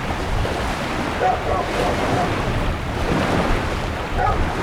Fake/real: real